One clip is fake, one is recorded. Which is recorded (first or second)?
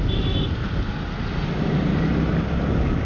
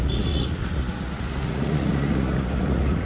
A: first